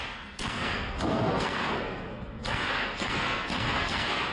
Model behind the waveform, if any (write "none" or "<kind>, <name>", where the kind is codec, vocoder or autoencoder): codec, SNAC